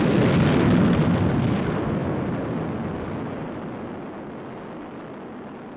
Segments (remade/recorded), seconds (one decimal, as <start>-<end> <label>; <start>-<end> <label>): 0.0-5.8 recorded